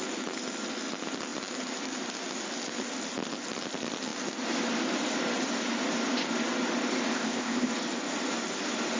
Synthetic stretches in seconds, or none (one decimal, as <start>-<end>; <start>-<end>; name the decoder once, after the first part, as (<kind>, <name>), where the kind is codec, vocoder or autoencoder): 7.1-7.7 (codec, ZipCodec)

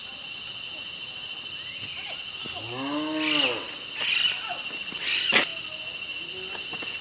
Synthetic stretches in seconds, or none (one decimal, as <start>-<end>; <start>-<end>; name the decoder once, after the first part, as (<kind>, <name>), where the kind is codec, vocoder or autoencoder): none

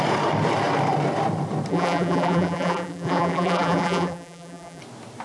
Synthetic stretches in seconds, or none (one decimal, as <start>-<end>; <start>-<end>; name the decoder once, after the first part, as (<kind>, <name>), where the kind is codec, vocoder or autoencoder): 1.7-4.8 (vocoder, BigVGAN v2)

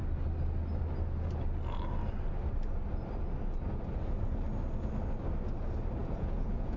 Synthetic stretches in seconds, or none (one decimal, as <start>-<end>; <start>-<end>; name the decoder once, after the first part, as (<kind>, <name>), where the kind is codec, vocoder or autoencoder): 6.0-6.8 (vocoder, Vocos)

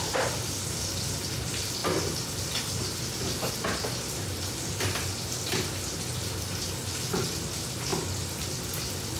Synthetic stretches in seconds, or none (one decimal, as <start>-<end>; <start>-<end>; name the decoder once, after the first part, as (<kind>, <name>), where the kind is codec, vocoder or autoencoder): none

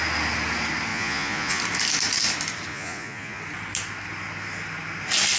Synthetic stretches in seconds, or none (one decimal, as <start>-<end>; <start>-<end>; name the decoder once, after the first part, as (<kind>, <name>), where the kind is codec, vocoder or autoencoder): 0.9-1.6 (vocoder, Vocos); 2.7-3.4